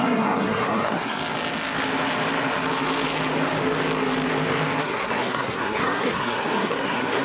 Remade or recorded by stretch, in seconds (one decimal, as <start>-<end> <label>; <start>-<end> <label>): 0.0-1.2 remade; 1.2-4.8 recorded; 4.8-7.2 remade